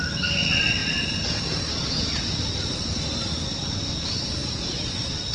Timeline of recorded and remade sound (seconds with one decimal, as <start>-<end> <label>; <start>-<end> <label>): 0.0-5.3 recorded